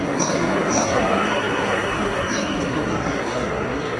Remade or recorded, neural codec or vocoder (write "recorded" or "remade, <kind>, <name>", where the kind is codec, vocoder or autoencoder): remade, codec, SNAC